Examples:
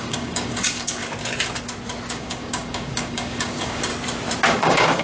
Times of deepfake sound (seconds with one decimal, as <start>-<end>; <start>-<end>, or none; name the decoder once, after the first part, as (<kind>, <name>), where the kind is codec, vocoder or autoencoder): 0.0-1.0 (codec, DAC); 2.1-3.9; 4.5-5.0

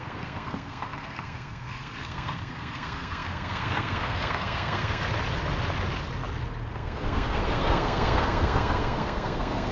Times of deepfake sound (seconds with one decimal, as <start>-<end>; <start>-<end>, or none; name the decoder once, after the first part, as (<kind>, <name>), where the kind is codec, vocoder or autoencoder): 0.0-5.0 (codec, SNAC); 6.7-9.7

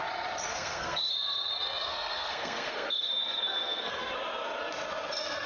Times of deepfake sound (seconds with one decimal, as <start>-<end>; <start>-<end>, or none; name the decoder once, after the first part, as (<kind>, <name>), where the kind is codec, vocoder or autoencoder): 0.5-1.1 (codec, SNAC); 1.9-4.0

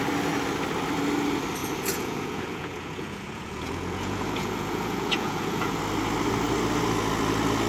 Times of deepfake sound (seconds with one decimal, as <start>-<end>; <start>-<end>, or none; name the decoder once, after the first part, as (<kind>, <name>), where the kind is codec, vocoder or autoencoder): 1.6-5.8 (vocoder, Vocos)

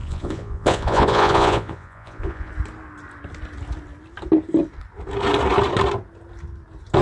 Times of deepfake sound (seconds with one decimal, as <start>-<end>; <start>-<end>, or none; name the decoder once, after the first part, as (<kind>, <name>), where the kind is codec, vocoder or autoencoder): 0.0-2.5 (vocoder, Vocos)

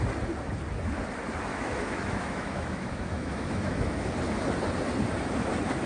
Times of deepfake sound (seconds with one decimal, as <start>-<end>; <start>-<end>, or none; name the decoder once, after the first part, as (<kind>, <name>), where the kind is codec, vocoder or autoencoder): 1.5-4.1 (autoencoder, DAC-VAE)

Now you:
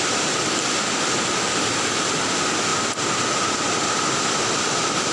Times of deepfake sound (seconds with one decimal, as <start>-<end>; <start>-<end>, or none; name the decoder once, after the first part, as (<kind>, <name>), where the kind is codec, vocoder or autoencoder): none